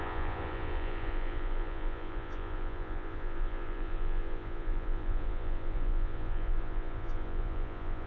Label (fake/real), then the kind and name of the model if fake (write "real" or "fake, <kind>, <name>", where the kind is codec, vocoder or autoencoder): fake, vocoder, Vocos